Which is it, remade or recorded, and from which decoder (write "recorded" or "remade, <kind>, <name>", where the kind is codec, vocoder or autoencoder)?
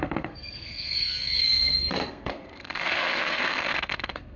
remade, codec, SNAC